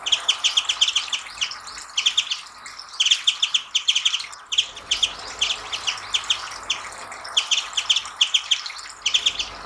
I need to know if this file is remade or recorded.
recorded